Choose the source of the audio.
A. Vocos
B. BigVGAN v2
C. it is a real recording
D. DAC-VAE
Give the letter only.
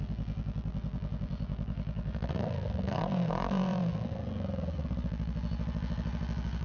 B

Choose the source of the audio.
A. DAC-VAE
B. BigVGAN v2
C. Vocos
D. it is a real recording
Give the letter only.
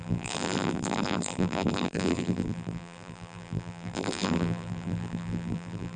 B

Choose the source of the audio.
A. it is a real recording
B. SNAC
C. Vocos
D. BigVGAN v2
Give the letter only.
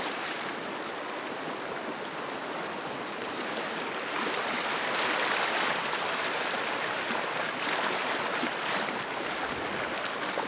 A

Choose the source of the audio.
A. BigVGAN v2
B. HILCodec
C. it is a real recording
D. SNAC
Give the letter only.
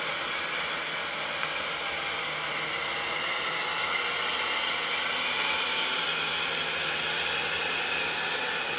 C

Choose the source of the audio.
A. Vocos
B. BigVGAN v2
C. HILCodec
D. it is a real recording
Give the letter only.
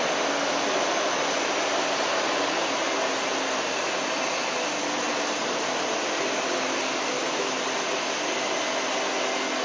D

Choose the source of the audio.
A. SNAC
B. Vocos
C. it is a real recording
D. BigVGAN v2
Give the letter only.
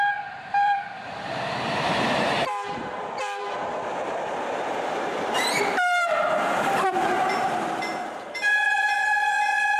D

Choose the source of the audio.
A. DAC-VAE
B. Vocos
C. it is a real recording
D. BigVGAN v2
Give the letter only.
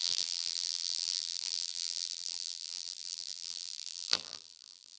D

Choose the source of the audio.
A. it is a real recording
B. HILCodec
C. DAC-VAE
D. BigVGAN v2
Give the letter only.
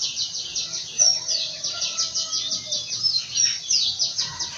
A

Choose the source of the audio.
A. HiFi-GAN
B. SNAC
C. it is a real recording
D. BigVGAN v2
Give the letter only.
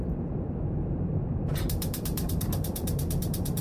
D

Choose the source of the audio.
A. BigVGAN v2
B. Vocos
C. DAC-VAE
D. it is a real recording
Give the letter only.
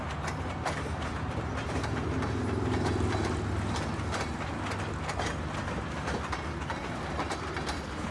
D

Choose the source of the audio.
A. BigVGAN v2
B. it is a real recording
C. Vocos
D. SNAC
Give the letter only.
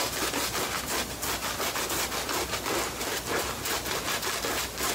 B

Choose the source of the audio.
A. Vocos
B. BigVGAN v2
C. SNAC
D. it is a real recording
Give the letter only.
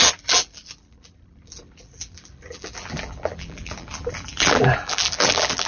B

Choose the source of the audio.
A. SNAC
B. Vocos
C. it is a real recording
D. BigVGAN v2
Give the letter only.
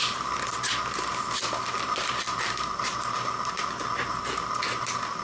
D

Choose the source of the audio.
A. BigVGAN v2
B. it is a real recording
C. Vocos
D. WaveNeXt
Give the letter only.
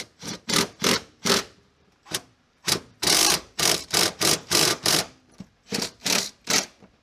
A